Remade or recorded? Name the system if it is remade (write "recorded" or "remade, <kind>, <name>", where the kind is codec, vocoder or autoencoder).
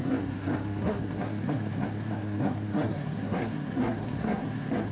remade, codec, SNAC